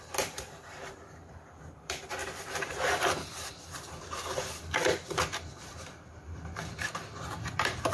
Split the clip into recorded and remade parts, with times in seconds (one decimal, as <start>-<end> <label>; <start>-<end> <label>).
0.0-7.9 remade